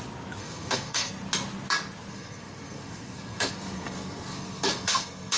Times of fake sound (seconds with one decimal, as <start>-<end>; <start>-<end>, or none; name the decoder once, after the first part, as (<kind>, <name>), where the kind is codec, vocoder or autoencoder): 0.4-1.1 (codec, SNAC); 2.1-5.4